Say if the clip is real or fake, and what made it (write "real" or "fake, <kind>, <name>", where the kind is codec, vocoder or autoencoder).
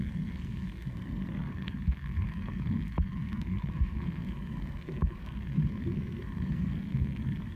fake, codec, SNAC